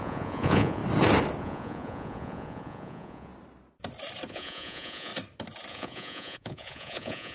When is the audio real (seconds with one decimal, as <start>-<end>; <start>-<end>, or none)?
0.8-1.4; 3.3-4.3; 5.1-5.7